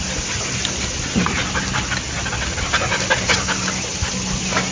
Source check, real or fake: real